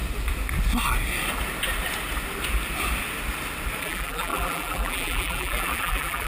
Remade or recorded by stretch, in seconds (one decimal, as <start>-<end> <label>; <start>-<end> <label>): 0.0-3.8 recorded; 3.8-6.3 remade